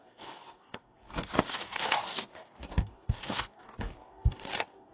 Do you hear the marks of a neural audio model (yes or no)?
yes